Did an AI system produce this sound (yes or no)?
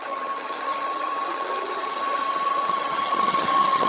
yes